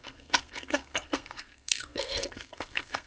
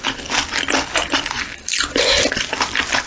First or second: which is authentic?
second